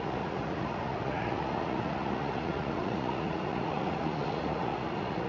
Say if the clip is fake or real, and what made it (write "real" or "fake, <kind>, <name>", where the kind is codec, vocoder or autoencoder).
fake, vocoder, Vocos